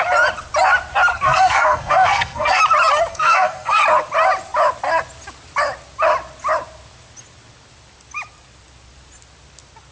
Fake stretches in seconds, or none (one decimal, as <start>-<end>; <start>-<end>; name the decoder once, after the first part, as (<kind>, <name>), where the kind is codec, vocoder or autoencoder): 1.1-2.6 (codec, SNAC); 3.1-3.8